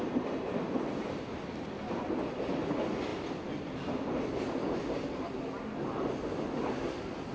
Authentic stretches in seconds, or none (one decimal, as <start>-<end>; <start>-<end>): 0.0-7.3

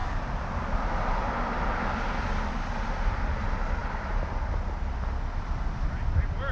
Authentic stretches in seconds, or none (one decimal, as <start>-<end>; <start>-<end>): 0.0-6.5

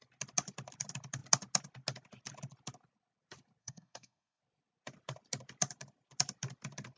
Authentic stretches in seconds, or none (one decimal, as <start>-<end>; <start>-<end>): 0.0-3.6; 4.4-7.0

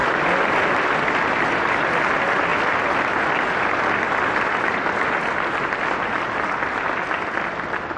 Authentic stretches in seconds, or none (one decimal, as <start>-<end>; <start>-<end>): 1.9-8.0

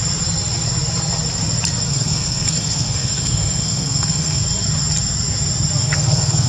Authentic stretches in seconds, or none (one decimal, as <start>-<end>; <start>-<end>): 0.0-1.9; 4.4-5.8

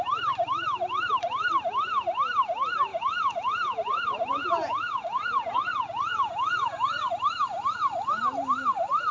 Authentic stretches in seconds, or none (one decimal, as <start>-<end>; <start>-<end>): 0.0-2.9; 7.1-9.1

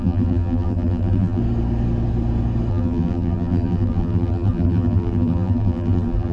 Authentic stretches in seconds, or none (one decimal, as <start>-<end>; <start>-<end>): 1.4-2.7

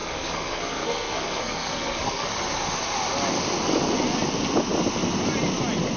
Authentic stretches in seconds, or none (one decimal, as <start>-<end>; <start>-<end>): 2.3-6.0